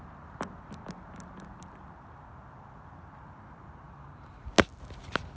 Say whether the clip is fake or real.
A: real